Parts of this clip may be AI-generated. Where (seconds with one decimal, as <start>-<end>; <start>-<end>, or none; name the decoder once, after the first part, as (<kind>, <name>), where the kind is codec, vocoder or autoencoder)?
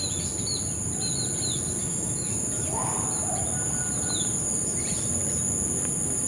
1.8-2.3 (autoencoder, DAC-VAE)